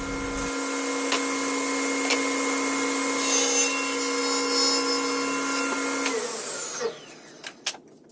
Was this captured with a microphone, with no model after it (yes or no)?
yes